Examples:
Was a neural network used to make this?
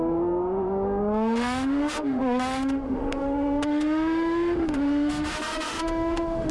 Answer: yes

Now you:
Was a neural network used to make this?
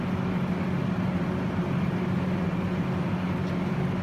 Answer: no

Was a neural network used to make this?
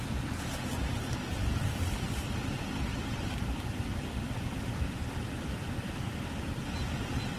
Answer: no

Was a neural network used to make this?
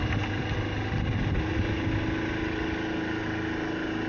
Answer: no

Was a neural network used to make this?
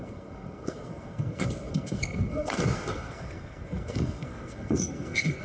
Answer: yes